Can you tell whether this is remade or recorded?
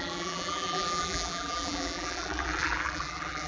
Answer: remade